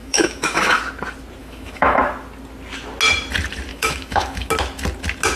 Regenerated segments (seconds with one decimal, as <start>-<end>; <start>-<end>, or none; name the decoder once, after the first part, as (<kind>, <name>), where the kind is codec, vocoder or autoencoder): 0.0-0.8 (autoencoder, DAC-VAE); 1.4-2.0; 3.7-4.5